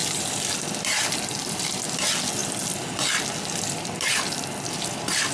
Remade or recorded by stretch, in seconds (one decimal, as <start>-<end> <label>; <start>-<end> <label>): 0.0-1.7 remade; 1.7-5.3 recorded